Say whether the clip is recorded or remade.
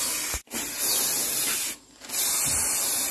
recorded